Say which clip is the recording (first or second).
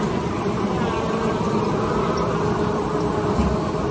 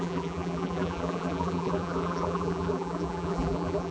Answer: first